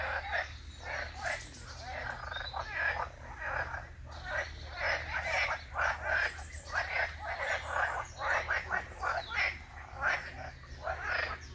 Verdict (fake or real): real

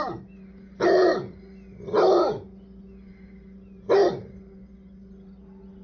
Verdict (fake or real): real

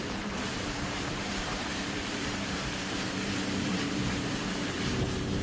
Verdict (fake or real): fake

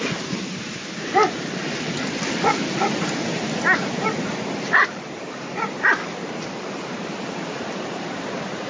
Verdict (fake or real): fake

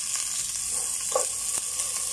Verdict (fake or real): real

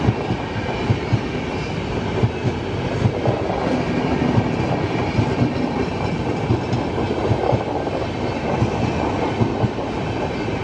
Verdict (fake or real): real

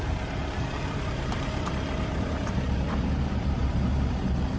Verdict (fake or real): fake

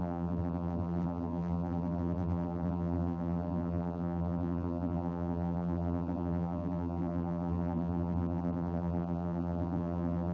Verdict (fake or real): fake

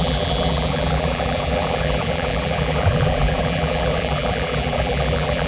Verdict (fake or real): fake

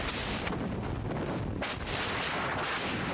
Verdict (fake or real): real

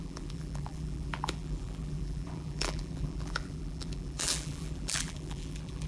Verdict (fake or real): fake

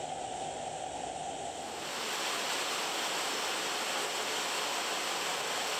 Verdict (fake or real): real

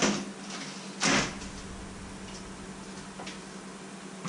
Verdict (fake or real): real